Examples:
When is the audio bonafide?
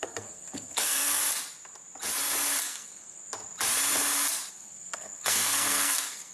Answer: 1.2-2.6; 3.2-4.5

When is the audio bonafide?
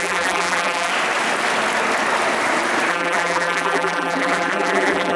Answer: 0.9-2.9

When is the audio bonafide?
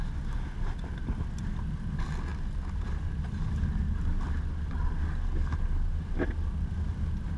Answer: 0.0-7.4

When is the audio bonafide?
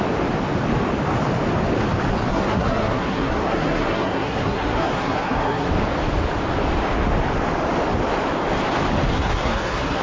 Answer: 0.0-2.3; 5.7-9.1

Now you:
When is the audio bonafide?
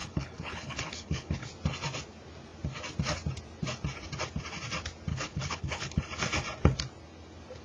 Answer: 1.5-5.1; 6.0-7.6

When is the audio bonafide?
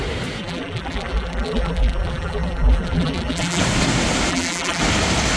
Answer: 0.0-0.4; 3.6-4.3; 4.8-5.4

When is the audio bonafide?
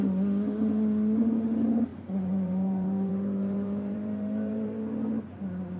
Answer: 0.0-1.9; 4.8-5.8